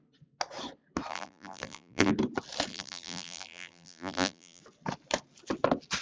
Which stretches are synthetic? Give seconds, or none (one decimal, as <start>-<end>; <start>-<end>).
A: 1.1-2.1; 2.7-4.6